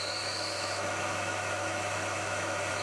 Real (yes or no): no